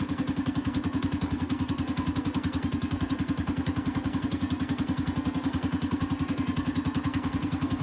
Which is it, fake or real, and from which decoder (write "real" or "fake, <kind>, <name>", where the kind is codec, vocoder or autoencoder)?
fake, codec, SNAC